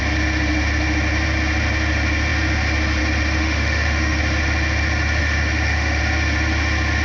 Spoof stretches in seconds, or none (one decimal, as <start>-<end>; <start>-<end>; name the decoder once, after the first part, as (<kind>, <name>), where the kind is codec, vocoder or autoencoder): 3.4-4.2 (autoencoder, DAC-VAE); 5.2-6.0